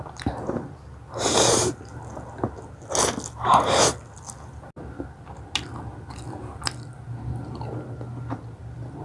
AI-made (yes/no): no